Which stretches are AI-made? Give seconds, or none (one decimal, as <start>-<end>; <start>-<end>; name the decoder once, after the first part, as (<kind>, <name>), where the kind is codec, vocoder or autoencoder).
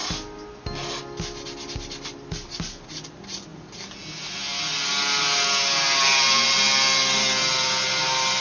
none